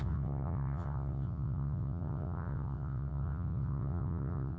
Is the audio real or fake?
fake